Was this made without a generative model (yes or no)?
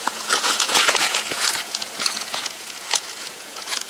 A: no